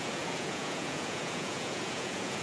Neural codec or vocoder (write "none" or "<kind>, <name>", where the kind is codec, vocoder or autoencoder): vocoder, Vocos